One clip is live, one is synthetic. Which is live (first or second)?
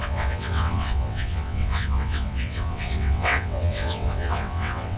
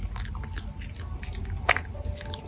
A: second